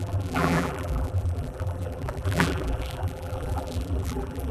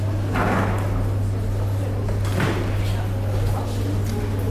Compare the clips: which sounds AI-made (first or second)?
first